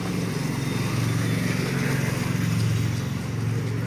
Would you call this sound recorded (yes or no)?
yes